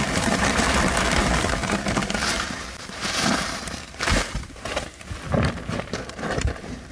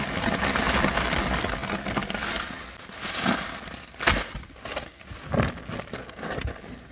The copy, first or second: first